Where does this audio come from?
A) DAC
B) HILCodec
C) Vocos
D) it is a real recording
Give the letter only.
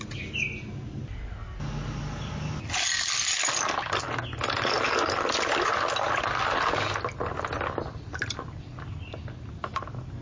D